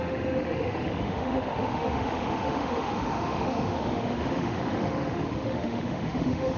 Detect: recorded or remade remade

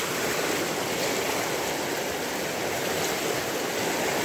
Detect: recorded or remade recorded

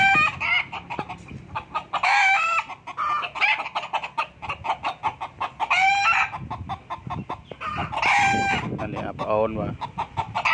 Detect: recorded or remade recorded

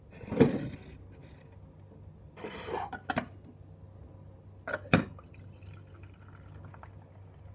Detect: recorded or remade recorded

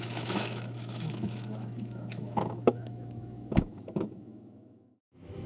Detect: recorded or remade remade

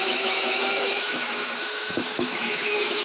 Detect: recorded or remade remade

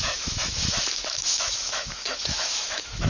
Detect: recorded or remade remade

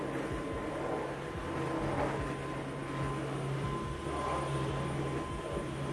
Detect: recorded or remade recorded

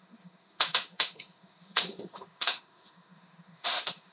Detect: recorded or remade remade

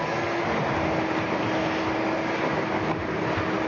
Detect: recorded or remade recorded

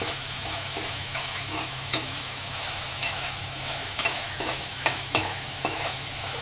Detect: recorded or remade remade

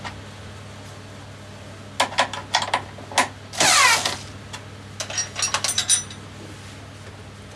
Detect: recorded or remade recorded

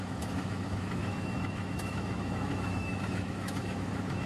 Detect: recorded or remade remade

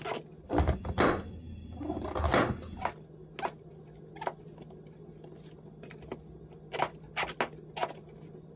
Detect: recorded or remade recorded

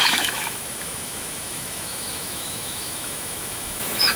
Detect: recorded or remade remade